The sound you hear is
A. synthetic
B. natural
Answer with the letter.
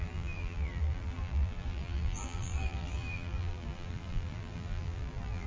A